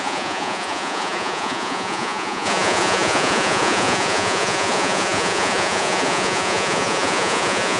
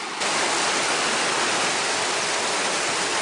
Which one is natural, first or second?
second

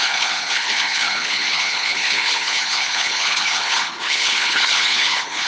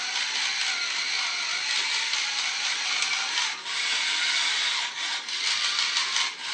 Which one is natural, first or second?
second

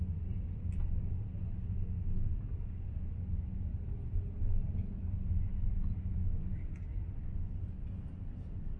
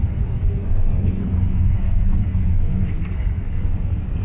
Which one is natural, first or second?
first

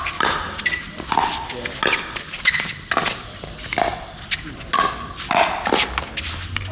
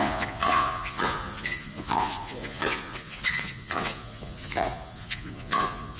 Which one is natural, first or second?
first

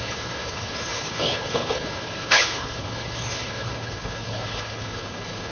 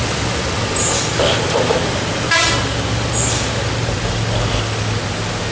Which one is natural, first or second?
second